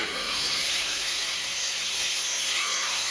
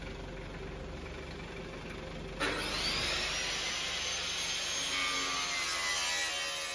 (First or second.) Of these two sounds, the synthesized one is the first